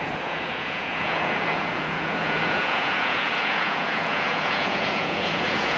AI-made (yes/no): yes